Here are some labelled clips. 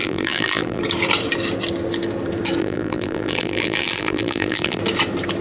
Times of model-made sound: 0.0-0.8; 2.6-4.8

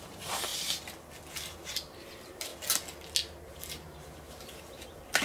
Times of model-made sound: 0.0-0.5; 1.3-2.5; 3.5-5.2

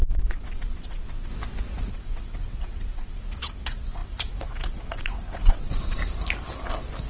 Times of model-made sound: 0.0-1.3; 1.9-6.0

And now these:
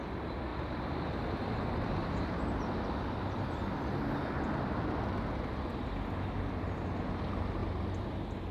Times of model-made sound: 0.5-2.3

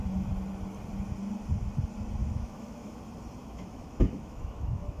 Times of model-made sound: 2.2-3.0; 3.4-5.0

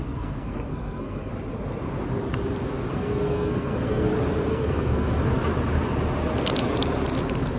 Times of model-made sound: 0.0-1.3; 2.9-4.1; 4.5-5.2

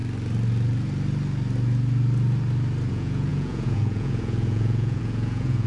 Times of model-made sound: 2.9-5.7

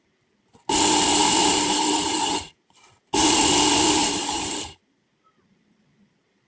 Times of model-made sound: 1.2-3.4; 4.0-5.1